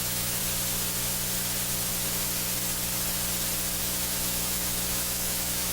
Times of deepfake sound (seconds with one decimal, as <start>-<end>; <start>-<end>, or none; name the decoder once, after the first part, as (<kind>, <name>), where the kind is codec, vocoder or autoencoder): 0.0-0.4 (autoencoder, DAC-VAE); 3.8-5.7